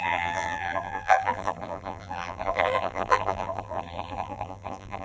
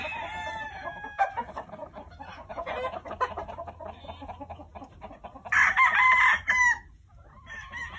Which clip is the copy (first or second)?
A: first